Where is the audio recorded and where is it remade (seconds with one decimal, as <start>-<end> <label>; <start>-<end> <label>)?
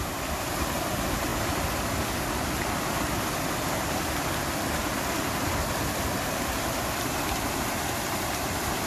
0.0-1.3 remade; 1.3-3.6 recorded; 3.6-8.9 remade